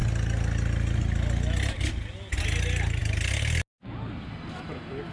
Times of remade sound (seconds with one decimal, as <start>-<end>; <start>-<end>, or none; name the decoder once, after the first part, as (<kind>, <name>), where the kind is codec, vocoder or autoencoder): none